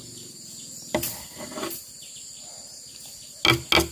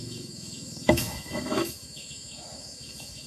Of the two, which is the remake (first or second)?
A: second